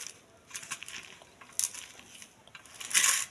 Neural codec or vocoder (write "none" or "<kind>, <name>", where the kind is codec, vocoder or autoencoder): none